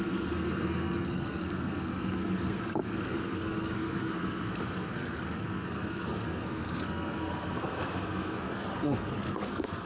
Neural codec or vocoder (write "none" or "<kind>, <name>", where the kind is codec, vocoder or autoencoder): codec, SNAC